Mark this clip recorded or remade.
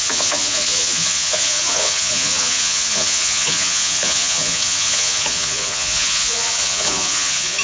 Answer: remade